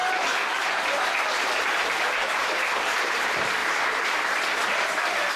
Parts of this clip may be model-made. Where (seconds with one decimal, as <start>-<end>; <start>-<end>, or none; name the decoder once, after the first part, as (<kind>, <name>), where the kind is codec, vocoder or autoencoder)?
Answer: 0.0-5.4 (vocoder, BigVGAN v2)